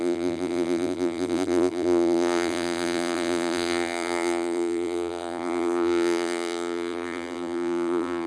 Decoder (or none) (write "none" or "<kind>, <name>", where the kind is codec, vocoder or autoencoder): vocoder, BigVGAN v2